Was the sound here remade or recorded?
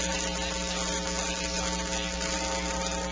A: recorded